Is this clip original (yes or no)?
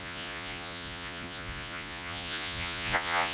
no